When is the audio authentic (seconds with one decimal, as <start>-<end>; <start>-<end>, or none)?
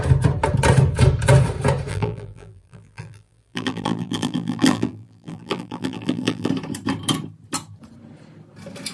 0.0-1.9; 6.5-8.9